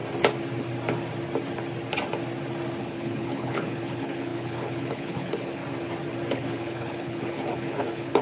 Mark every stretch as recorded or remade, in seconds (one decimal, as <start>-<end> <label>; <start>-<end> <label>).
0.0-2.8 recorded; 2.8-5.6 remade; 5.6-6.3 recorded; 6.3-8.2 remade